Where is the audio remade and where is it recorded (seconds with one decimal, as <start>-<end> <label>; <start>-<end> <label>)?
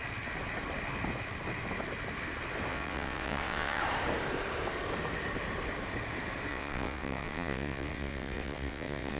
0.0-2.7 recorded; 2.7-3.8 remade; 3.8-6.5 recorded; 6.5-9.2 remade